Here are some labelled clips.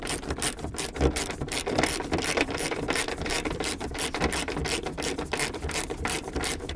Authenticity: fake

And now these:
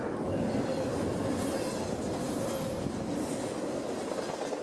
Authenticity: real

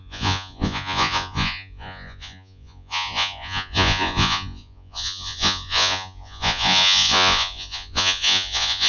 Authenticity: fake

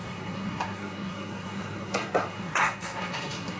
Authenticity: fake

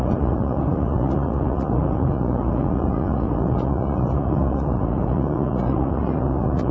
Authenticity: fake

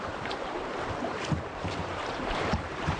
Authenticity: fake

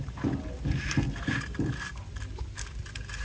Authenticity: real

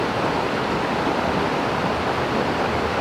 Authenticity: fake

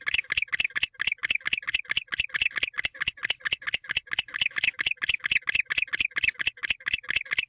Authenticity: real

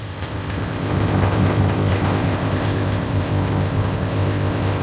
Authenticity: fake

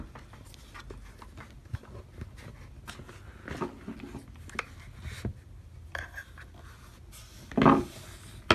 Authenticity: real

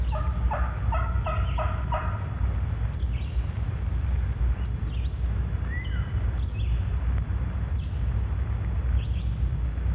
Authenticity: real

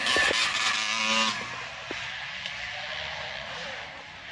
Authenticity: real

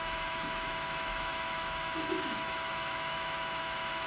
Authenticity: fake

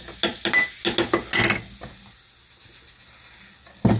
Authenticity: real